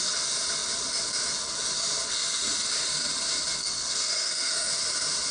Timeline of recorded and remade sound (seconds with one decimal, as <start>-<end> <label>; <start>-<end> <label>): 0.0-3.6 recorded; 3.6-4.7 remade; 4.7-5.3 recorded